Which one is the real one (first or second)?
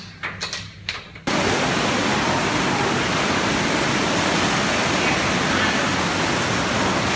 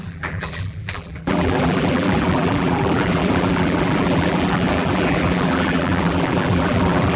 first